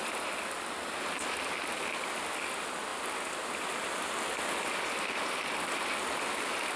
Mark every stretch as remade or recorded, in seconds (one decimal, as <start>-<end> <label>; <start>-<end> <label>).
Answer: 0.0-6.8 recorded